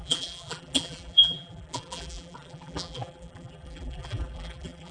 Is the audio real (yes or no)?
no